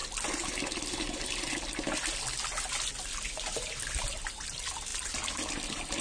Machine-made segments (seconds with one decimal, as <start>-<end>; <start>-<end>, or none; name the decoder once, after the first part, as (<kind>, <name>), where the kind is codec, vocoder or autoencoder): none